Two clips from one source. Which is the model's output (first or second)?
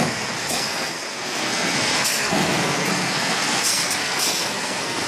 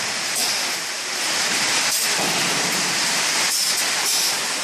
first